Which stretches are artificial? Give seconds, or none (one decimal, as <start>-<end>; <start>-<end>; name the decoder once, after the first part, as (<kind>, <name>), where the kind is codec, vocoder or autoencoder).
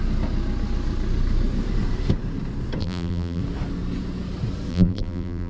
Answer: 2.8-3.4 (vocoder, BigVGAN v2); 4.7-5.5